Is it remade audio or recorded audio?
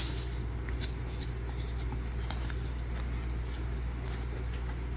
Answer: recorded